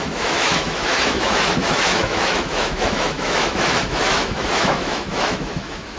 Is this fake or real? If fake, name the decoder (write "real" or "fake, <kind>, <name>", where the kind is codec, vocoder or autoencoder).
fake, autoencoder, DAC-VAE